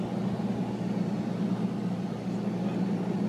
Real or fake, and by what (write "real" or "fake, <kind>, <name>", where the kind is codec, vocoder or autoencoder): real